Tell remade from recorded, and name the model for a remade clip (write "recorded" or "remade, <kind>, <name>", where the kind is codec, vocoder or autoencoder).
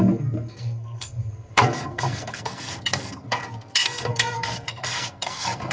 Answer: remade, codec, SNAC